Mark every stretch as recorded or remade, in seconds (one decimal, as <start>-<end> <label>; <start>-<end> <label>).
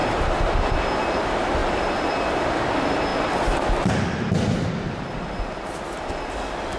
0.0-0.6 remade; 0.6-6.8 recorded